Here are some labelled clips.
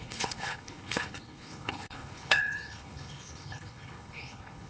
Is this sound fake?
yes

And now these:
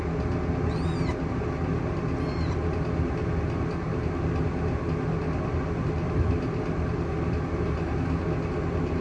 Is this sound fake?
no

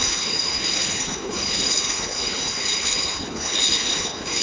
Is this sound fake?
yes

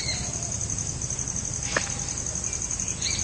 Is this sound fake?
no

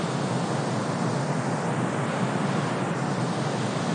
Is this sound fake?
no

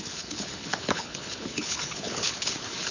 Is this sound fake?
yes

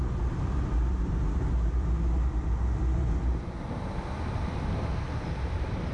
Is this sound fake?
no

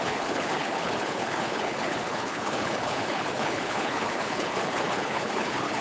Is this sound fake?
yes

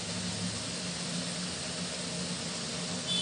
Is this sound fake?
no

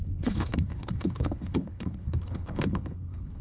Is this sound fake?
yes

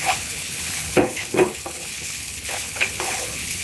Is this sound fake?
yes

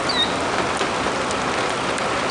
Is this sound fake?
no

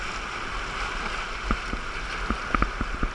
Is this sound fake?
no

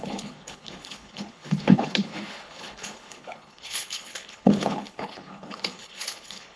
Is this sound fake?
yes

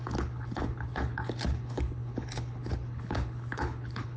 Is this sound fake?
yes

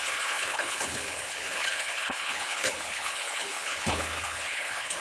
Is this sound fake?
yes